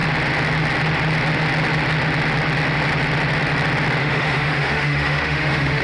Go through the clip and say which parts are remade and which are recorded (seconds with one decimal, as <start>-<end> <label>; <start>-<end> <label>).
0.0-4.0 recorded; 4.0-5.8 remade